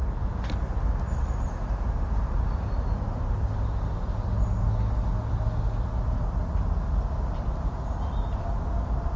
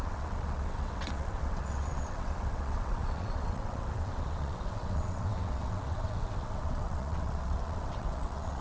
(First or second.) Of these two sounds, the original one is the first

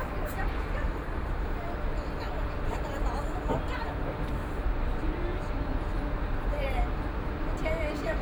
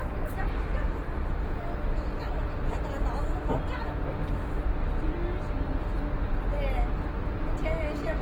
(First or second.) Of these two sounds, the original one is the second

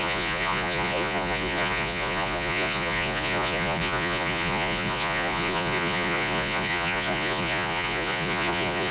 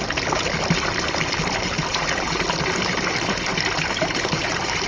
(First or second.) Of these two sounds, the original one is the second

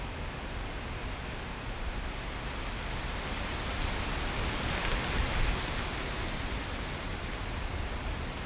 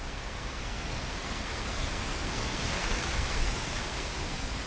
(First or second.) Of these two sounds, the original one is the first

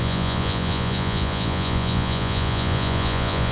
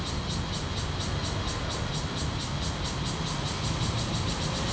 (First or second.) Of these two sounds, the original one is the second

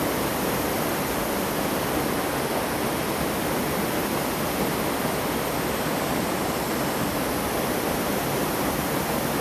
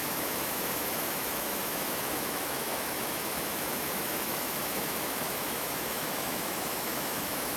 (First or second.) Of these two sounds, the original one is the first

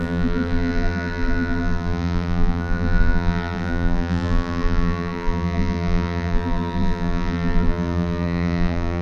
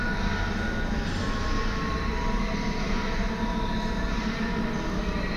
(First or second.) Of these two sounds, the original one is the second